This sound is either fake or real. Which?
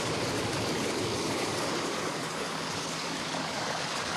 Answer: fake